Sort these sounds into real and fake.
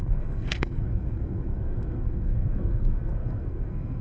fake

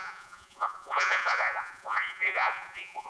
fake